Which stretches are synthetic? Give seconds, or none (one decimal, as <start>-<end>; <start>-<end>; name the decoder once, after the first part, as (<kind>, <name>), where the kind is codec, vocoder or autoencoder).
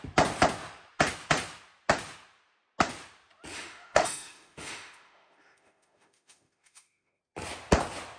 3.5-7.2 (autoencoder, DAC-VAE)